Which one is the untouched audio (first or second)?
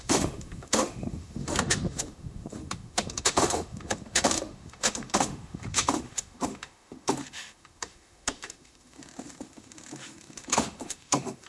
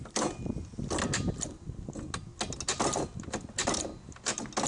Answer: second